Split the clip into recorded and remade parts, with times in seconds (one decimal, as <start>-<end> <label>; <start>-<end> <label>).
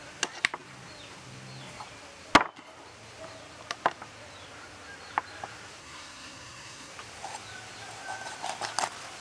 0.0-5.8 recorded; 5.8-6.9 remade; 6.9-9.2 recorded